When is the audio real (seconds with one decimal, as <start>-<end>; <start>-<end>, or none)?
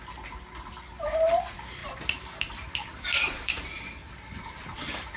0.0-1.8; 3.5-4.0